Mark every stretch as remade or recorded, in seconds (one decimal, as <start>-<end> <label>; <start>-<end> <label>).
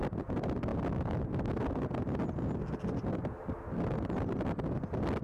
0.0-5.2 recorded